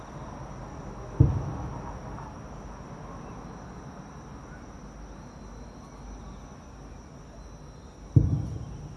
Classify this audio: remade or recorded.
recorded